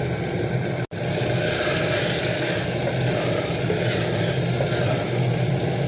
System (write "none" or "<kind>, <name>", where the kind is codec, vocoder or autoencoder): none